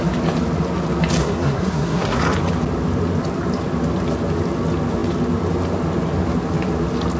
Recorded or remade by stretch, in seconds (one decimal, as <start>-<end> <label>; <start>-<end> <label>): 0.0-1.2 recorded; 1.2-2.2 remade; 2.2-7.2 recorded